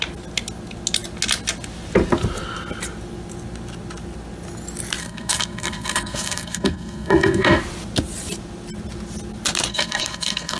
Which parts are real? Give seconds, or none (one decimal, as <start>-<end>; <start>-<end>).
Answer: 0.0-5.0; 7.6-9.7